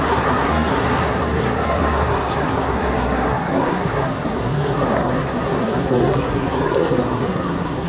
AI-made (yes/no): yes